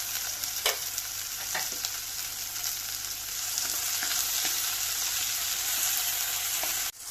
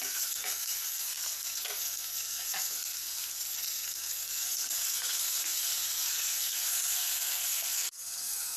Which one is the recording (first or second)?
first